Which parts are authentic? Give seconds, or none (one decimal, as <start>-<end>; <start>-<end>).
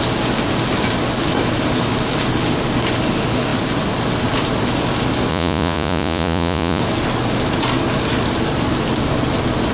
0.0-5.3; 6.8-9.7